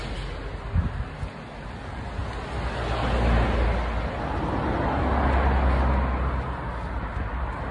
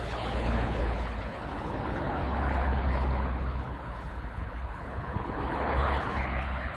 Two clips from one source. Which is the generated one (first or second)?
second